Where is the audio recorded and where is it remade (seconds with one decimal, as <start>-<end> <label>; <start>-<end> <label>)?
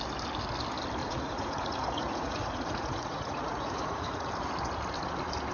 0.0-1.0 recorded; 1.0-4.3 remade; 4.3-5.5 recorded